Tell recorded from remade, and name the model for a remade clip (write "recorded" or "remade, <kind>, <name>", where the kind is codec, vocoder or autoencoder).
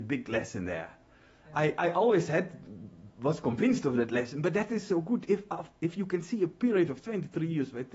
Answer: remade, autoencoder, DAC-VAE